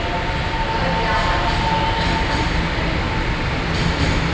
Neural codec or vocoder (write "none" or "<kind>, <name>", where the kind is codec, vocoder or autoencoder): none